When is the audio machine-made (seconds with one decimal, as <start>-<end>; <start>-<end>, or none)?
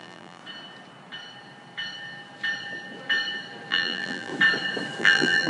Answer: 0.0-0.4; 3.7-4.3; 5.0-5.5